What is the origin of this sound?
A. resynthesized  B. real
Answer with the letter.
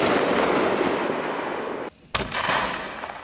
B